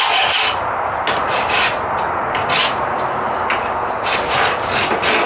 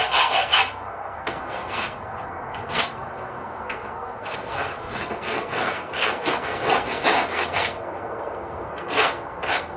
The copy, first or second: second